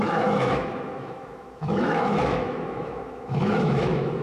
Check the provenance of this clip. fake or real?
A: fake